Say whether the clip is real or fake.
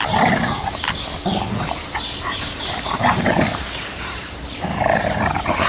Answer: real